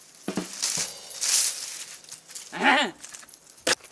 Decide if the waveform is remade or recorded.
recorded